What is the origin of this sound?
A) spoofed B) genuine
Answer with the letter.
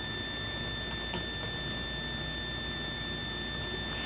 B